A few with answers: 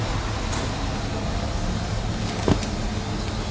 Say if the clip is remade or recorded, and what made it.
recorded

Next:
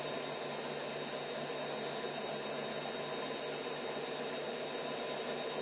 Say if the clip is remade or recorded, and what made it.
recorded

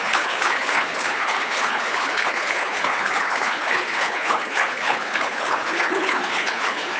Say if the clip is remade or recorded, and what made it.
remade, codec, HILCodec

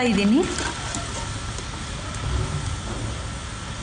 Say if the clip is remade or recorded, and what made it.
recorded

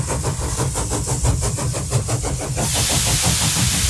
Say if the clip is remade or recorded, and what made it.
recorded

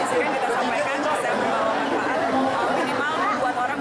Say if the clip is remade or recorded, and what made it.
recorded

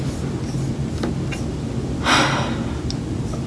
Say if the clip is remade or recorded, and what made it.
recorded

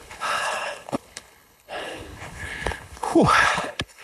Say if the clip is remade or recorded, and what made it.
remade, codec, HILCodec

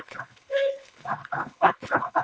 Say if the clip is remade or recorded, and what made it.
remade, codec, HILCodec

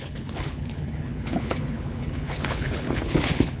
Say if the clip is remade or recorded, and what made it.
remade, codec, HILCodec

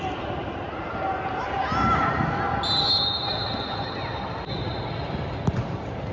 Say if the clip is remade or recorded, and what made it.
recorded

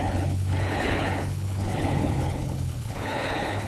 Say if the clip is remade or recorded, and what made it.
remade, codec, HILCodec